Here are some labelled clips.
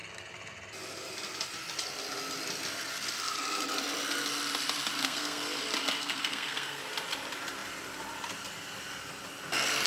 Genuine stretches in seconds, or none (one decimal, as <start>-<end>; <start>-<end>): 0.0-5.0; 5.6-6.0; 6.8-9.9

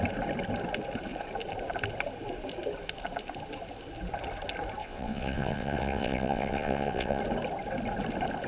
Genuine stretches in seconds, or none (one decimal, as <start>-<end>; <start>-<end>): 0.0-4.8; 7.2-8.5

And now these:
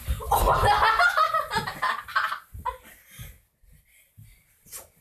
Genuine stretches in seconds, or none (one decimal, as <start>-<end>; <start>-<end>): 0.0-5.0

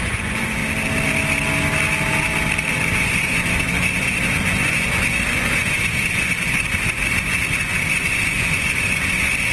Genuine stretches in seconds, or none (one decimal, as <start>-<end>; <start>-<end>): 0.6-2.9